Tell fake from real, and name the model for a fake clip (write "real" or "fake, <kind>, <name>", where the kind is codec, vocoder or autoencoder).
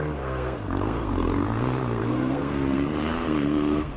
fake, codec, SNAC